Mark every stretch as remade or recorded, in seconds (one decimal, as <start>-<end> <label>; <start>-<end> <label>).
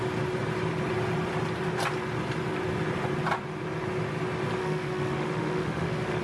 0.0-4.6 recorded; 4.6-6.2 remade